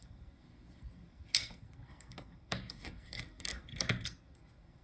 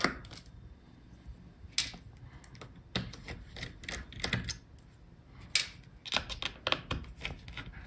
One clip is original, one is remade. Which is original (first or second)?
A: second